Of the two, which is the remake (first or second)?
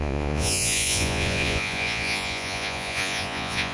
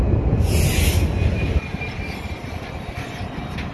first